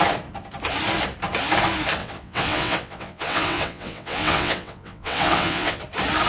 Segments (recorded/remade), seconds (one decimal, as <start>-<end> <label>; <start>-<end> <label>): 0.0-2.0 recorded; 2.0-5.8 remade; 5.8-6.3 recorded

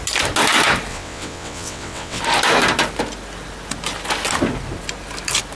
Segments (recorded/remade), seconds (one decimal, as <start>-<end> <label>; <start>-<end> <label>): 0.0-0.9 recorded; 0.9-2.2 remade; 2.2-5.5 recorded